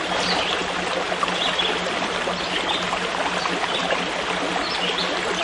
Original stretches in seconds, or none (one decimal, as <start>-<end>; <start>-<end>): 0.0-5.4